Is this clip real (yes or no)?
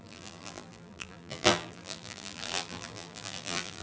no